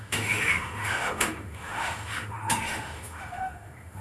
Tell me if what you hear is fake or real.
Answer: fake